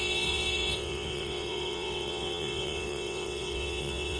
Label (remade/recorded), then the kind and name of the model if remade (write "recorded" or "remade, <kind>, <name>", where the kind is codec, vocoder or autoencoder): remade, vocoder, WaveNeXt